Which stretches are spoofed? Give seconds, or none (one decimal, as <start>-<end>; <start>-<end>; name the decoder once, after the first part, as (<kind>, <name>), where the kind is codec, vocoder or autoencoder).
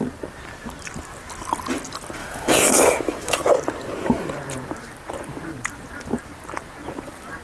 2.2-3.5 (autoencoder, DAC-VAE)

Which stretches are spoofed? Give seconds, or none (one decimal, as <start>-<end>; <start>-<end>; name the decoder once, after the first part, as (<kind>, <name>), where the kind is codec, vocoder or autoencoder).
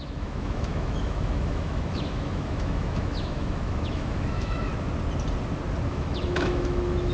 0.0-4.7 (autoencoder, DAC-VAE); 5.9-7.1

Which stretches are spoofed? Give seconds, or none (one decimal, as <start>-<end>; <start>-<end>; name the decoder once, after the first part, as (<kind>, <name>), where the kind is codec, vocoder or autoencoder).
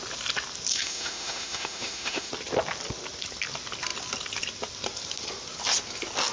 0.7-2.3 (autoencoder, DAC-VAE)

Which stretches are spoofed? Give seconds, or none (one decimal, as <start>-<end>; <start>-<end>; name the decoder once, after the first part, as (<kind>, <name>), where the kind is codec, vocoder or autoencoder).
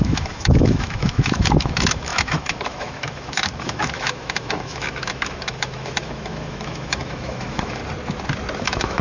0.0-7.8 (autoencoder, DAC-VAE); 8.6-9.0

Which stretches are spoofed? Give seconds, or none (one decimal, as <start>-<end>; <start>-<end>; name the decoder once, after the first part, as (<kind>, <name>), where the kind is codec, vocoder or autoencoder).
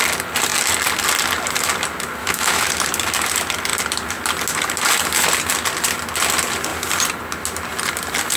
2.2-2.7 (autoencoder, DAC-VAE)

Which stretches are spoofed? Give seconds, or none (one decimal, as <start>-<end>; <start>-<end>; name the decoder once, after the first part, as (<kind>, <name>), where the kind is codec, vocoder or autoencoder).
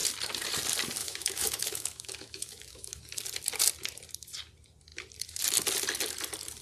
1.0-3.0 (autoencoder, DAC-VAE)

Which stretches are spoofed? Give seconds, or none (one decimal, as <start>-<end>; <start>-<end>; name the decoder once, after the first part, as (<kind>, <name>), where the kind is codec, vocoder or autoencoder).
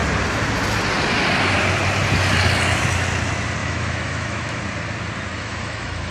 3.6-4.6 (autoencoder, DAC-VAE); 5.3-6.1